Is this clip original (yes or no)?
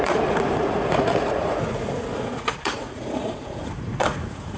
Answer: no